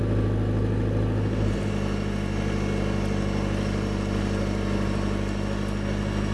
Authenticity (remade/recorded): recorded